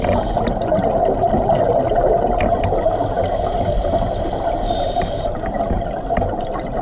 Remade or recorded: recorded